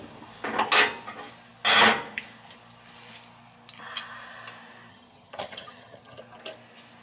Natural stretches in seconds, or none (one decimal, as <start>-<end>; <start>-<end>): 0.0-4.9; 6.2-7.0